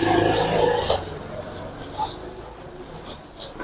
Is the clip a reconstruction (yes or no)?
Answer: no